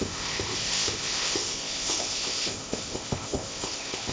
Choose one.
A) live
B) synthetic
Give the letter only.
B